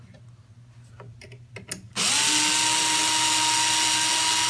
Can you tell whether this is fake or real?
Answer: real